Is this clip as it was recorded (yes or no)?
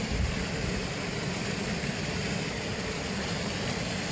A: no